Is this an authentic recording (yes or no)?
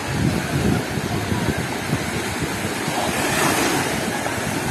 yes